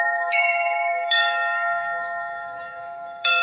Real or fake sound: fake